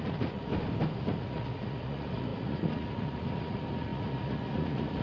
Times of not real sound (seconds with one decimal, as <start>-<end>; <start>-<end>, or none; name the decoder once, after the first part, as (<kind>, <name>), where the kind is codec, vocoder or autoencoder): 0.0-0.5 (vocoder, Vocos); 1.0-5.0